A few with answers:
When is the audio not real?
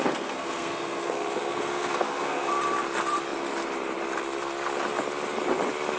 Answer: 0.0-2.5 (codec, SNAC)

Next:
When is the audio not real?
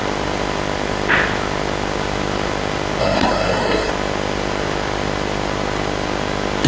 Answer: 3.0-3.9 (codec, SNAC)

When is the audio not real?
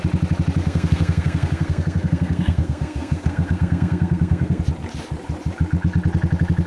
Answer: 0.6-4.6 (codec, SNAC)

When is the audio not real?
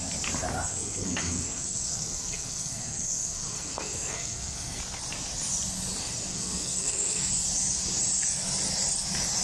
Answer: 0.7-4.8 (codec, SNAC); 6.3-7.3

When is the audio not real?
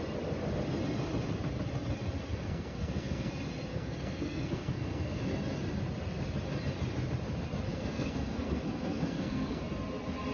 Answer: 2.3-3.3 (codec, SNAC); 3.7-5.2; 7.7-9.6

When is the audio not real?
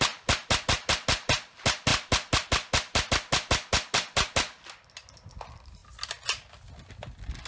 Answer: none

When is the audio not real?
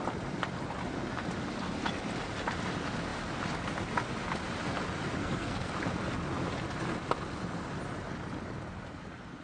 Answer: 5.2-5.7 (codec, SNAC)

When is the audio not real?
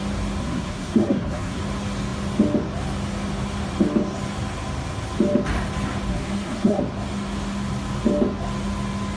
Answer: 0.4-1.6 (codec, SNAC); 6.1-6.8